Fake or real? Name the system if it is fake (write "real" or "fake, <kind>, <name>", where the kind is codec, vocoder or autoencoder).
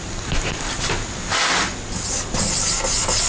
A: real